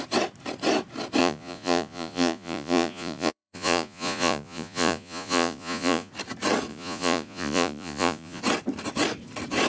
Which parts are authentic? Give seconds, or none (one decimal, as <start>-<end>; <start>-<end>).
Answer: 0.0-1.2; 6.1-6.7; 8.4-9.7